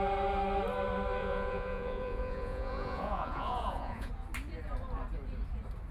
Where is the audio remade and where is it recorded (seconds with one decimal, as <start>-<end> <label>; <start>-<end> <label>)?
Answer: 0.0-1.2 recorded; 1.2-4.1 remade; 4.1-5.9 recorded